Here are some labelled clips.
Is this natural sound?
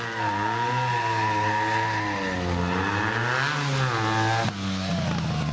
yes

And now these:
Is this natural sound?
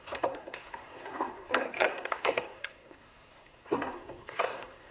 no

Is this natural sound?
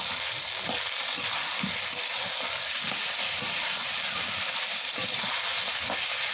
yes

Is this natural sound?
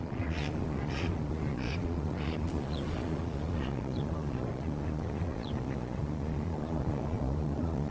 no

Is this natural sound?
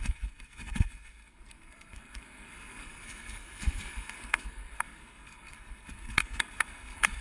no